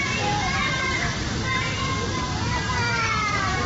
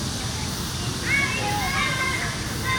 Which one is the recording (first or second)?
second